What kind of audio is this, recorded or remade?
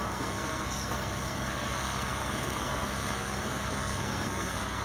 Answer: remade